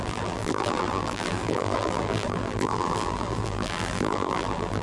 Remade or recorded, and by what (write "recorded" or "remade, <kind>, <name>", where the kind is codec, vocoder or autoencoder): remade, vocoder, BigVGAN v2